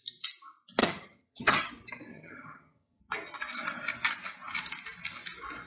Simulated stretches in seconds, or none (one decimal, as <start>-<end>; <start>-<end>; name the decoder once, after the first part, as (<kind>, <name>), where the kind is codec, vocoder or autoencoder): 0.8-1.7 (vocoder, HiFi-GAN); 2.1-3.0